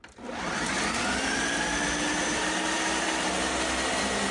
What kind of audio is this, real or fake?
real